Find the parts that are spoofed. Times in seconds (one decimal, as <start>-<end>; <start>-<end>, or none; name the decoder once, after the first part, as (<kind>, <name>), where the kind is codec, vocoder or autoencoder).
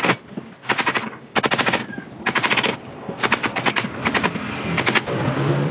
0.9-1.4 (codec, DAC); 2.7-3.9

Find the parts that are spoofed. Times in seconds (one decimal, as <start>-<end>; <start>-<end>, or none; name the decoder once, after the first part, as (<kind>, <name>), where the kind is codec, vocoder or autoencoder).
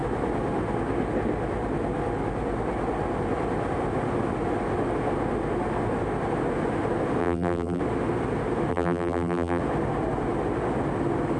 7.2-7.8 (vocoder, BigVGAN v2); 8.7-9.6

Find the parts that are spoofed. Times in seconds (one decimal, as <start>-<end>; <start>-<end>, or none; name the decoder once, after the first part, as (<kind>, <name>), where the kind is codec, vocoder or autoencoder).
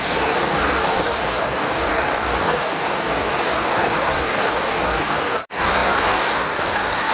0.0-7.1 (codec, DAC)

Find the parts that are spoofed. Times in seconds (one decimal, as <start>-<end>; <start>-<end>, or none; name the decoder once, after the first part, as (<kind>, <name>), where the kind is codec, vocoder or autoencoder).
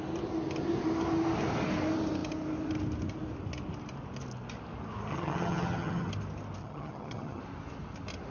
5.1-6.1 (vocoder, HiFi-GAN); 6.6-7.4